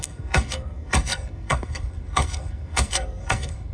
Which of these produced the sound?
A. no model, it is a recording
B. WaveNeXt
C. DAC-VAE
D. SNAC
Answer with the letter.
D